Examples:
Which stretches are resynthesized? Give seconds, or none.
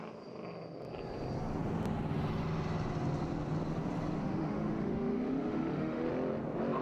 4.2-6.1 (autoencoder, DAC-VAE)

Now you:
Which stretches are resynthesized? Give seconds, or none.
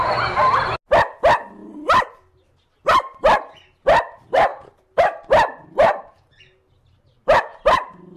4.5-6.4 (vocoder, BigVGAN v2); 7.5-8.2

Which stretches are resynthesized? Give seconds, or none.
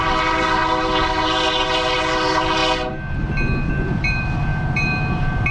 0.0-2.6 (vocoder, BigVGAN v2); 3.7-5.5